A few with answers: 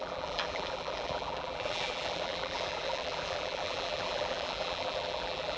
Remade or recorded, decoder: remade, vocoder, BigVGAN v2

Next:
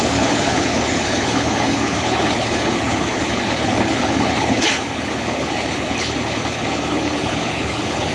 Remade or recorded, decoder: remade, codec, HILCodec